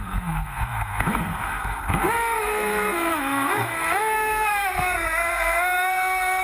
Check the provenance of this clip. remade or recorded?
remade